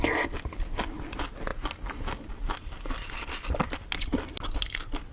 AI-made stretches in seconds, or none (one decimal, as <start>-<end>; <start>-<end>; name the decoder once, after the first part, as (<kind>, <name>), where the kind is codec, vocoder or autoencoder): none